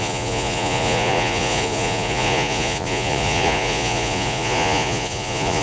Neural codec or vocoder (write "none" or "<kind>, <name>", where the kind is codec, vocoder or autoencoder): vocoder, Vocos